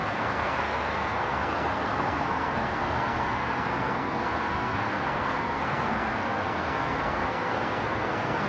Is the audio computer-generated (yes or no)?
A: yes